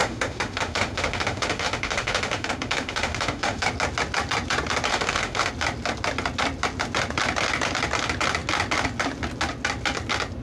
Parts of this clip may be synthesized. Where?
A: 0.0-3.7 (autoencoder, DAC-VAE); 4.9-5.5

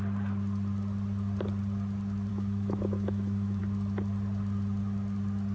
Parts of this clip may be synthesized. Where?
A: 2.3-3.6 (autoencoder, DAC-VAE)

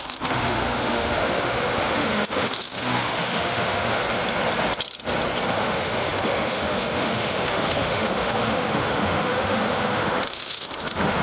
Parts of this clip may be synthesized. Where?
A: 0.0-4.0 (autoencoder, DAC-VAE); 5.5-11.2

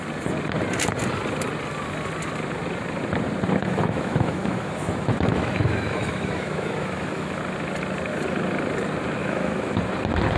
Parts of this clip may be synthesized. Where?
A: 3.6-7.4 (autoencoder, DAC-VAE); 9.2-9.8